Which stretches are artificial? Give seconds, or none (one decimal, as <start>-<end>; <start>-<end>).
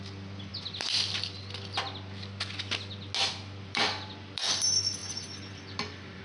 0.0-0.5; 3.3-6.2